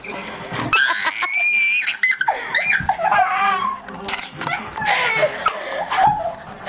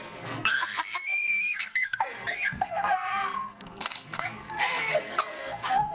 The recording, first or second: first